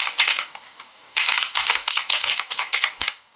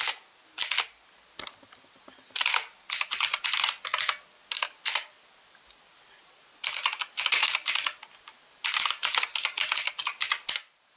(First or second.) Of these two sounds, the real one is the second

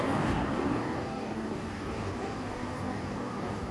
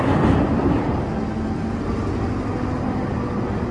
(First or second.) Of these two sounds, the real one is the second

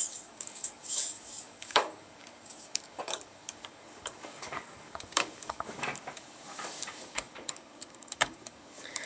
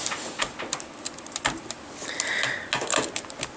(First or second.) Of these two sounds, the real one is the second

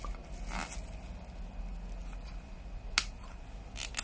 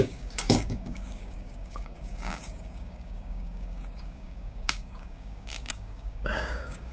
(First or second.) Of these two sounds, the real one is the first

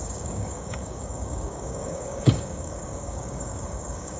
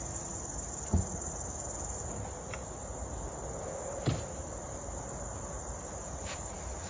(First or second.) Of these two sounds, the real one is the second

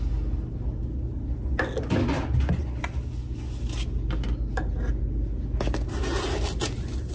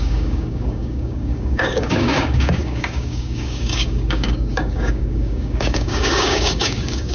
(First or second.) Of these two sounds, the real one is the first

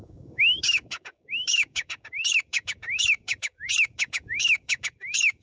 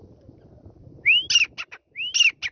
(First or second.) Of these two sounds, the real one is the second